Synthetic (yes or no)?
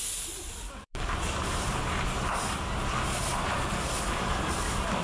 yes